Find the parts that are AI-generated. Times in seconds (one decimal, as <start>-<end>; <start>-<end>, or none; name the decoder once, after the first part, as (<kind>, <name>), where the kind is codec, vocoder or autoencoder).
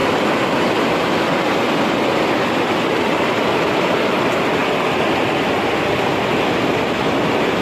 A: 3.2-4.6 (vocoder, BigVGAN v2)